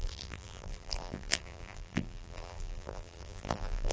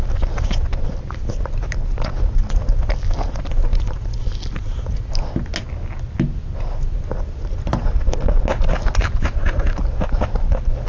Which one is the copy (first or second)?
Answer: first